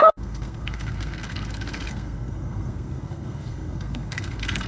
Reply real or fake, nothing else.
fake